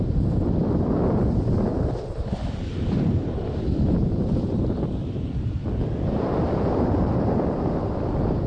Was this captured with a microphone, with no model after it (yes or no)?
no